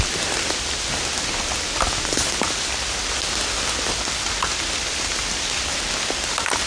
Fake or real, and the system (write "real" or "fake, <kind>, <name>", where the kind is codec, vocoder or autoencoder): real